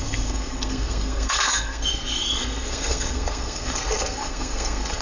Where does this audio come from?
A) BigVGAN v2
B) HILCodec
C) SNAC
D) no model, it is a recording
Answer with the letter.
C